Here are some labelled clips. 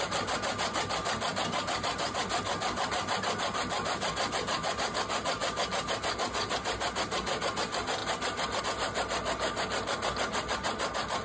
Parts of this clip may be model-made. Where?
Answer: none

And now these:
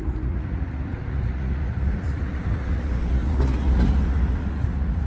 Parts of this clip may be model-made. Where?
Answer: 0.0-5.1 (vocoder, Vocos)

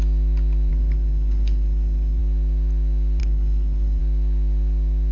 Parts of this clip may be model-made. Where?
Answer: 0.7-2.2 (codec, HILCodec); 3.2-4.0

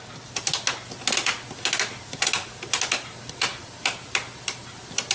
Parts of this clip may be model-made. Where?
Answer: none

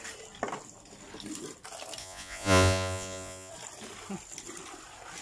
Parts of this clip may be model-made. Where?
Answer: 2.0-3.5 (vocoder, Vocos)

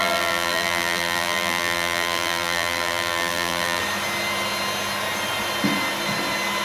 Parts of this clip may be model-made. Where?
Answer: 0.0-3.8 (vocoder, BigVGAN v2)

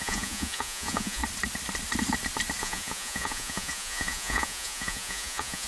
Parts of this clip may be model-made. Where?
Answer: 0.0-1.2 (vocoder, Vocos); 2.6-5.7